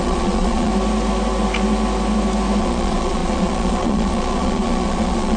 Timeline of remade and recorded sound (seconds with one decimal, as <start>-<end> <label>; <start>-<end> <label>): 0.0-0.7 remade; 0.7-2.6 recorded; 2.6-5.4 remade